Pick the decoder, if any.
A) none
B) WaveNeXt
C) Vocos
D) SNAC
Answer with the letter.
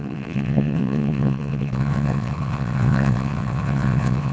B